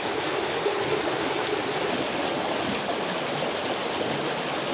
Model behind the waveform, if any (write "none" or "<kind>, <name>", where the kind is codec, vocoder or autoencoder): none